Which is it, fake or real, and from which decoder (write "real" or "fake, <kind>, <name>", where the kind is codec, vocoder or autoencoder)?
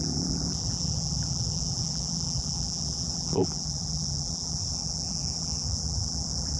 fake, vocoder, BigVGAN v2